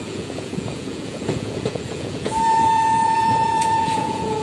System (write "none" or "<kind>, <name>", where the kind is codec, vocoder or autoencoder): vocoder, Vocos